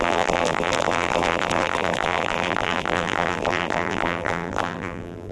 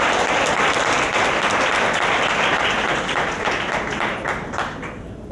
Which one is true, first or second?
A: second